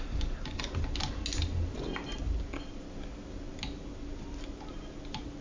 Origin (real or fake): real